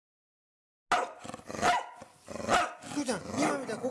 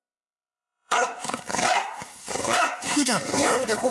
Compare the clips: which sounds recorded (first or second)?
first